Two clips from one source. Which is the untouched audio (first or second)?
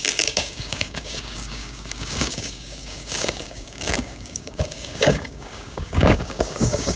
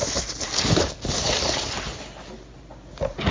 second